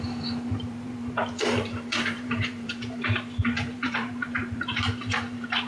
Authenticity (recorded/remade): remade